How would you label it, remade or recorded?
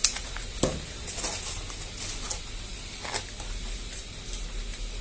recorded